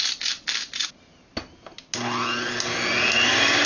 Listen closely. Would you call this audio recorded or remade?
recorded